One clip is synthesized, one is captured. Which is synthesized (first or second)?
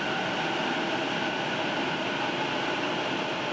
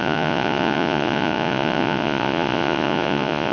second